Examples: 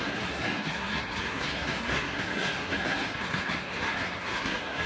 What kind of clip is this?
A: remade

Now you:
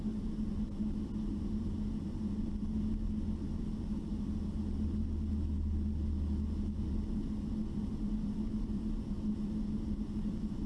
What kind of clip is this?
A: recorded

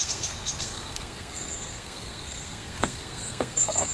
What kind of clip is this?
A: remade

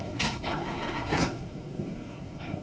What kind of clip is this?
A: remade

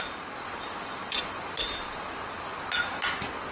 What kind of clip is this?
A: recorded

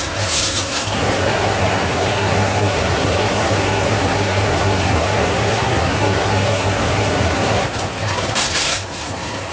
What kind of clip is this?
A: remade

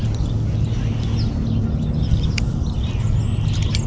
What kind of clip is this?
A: recorded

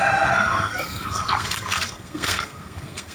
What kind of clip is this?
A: remade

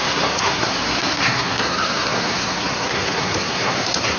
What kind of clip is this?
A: remade